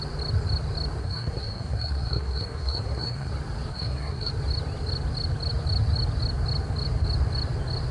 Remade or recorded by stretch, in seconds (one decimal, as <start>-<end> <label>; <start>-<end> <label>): 0.0-1.0 recorded; 1.0-3.3 remade; 3.3-3.7 recorded; 3.7-4.3 remade; 4.3-7.9 recorded